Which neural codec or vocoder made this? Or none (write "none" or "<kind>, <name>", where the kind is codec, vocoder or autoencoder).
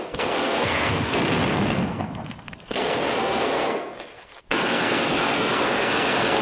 codec, SNAC